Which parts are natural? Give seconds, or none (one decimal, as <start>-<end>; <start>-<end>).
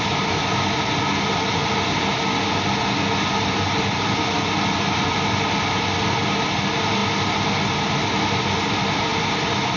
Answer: 0.0-9.8